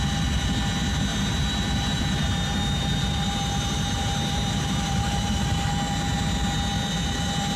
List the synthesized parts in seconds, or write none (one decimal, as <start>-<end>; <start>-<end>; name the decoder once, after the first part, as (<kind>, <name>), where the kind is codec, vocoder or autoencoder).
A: 1.1-5.7 (vocoder, BigVGAN v2)